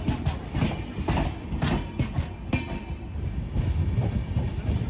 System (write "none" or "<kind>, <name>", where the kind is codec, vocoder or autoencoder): none